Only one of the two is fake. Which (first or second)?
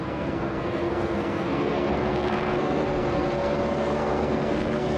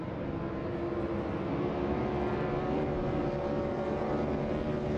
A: first